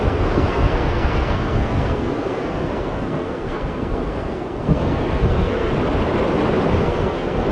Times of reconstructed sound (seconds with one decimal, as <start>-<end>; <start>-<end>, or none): 0.0-5.7; 6.8-7.5